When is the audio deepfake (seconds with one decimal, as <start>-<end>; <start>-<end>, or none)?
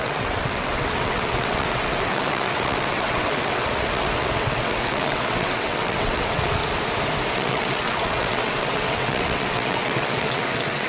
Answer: 0.0-6.6; 7.3-10.9